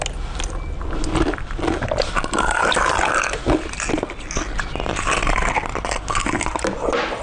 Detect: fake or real real